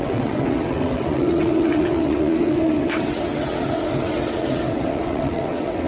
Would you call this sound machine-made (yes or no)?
yes